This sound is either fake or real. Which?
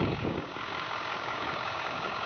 fake